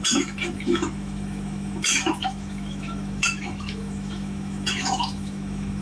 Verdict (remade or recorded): remade